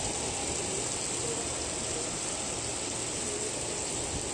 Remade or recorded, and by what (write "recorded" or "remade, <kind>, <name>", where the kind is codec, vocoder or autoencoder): recorded